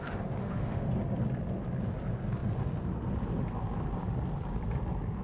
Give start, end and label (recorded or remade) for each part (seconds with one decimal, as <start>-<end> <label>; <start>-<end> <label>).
0.0-0.4 recorded; 0.4-0.9 remade; 0.9-5.2 recorded